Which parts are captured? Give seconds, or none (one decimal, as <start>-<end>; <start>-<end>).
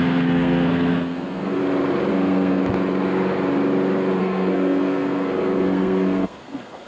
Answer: 1.6-2.1; 2.6-4.2